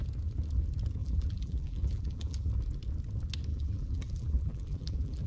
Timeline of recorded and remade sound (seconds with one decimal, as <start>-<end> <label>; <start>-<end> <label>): 0.0-1.0 recorded; 1.0-2.5 remade; 2.5-3.5 recorded; 3.5-5.3 remade